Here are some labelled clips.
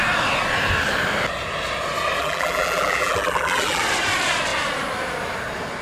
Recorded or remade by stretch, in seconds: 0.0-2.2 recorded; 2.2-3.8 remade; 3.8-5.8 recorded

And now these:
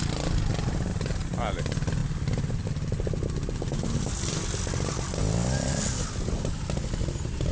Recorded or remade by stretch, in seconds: 0.0-2.0 remade; 2.0-4.0 recorded; 4.0-5.2 remade; 5.2-6.0 recorded; 6.0-7.5 remade

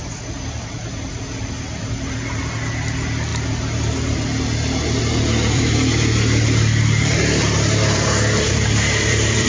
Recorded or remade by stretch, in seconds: 0.0-9.5 remade

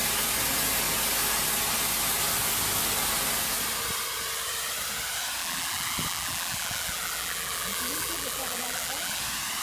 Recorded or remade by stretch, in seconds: 0.0-5.4 recorded; 5.4-9.2 remade; 9.2-9.6 recorded

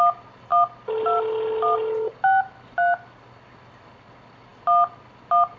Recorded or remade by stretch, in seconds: 0.0-5.6 recorded

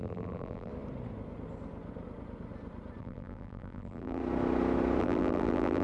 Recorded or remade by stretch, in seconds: 0.0-0.7 remade; 0.7-3.0 recorded; 3.0-4.2 remade; 4.2-5.0 recorded; 5.0-5.8 remade

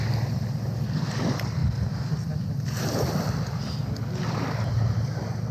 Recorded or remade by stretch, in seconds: 0.0-5.5 recorded